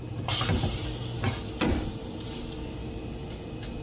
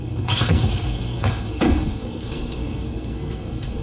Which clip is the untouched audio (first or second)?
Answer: first